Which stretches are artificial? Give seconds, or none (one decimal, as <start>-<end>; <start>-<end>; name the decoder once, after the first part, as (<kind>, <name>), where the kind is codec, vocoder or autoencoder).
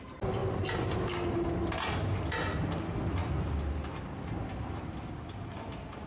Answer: none